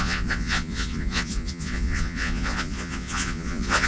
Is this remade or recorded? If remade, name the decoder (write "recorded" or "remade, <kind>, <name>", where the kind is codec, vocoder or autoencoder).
remade, vocoder, Vocos